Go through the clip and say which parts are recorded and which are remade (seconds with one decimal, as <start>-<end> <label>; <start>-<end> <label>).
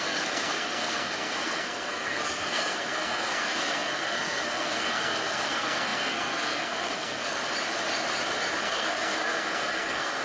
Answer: 0.0-7.4 remade; 7.4-8.6 recorded; 8.6-10.2 remade